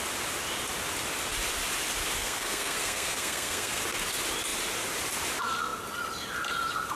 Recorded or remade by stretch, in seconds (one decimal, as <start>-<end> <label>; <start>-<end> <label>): 0.0-2.2 recorded; 2.2-3.8 remade; 3.8-7.0 recorded